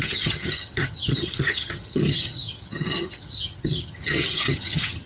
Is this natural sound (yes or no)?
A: no